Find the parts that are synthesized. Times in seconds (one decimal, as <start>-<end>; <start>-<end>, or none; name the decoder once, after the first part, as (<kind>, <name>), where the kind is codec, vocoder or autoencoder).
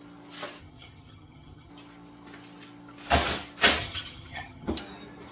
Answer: 0.6-1.7 (vocoder, HiFi-GAN); 3.8-4.7